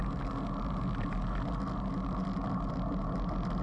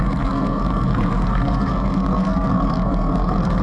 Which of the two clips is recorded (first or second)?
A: first